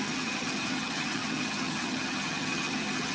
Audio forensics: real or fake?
fake